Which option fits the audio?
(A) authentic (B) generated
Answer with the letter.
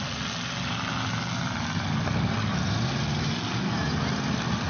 A